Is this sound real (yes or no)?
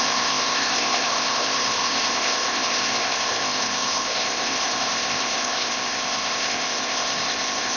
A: no